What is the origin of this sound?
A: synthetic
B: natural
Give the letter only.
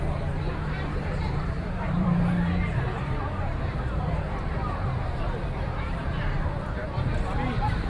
A